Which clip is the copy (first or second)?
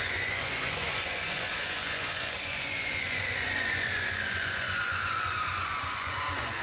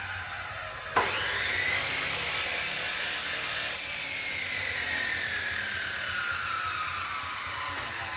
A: first